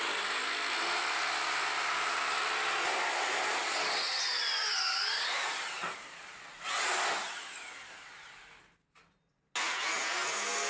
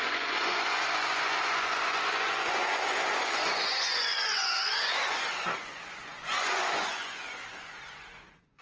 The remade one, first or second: second